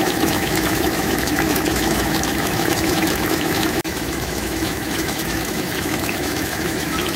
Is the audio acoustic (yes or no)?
no